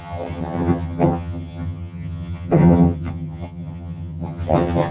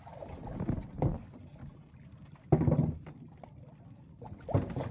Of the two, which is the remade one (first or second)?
first